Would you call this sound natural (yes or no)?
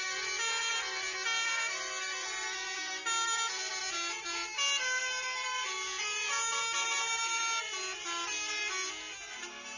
yes